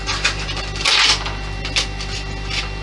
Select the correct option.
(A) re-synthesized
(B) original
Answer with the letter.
B